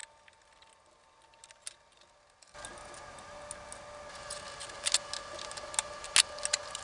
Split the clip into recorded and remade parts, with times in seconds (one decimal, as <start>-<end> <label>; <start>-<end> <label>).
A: 0.0-6.8 recorded